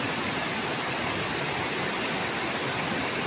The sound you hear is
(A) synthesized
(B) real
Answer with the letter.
B